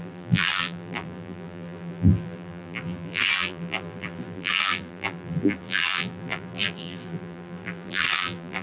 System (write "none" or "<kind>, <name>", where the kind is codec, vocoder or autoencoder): vocoder, BigVGAN v2